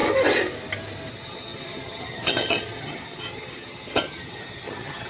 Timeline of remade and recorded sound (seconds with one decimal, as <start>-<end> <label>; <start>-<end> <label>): 0.0-1.1 recorded; 1.1-5.1 remade